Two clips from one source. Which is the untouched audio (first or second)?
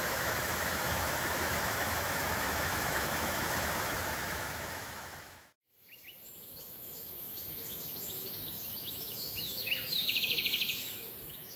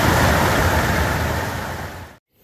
second